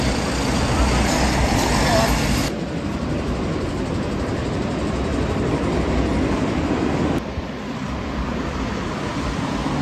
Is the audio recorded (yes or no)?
yes